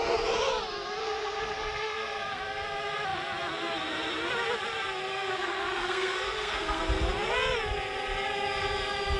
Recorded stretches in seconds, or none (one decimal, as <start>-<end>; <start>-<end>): 0.0-1.0; 2.4-5.1; 6.8-9.2